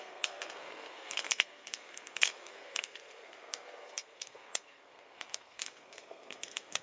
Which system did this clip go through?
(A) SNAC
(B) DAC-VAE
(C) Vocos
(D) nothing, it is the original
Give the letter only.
A